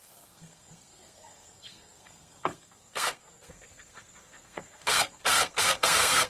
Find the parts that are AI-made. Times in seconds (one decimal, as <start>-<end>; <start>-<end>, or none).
0.0-6.3